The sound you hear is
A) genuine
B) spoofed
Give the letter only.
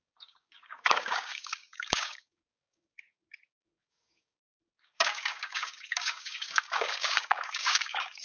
B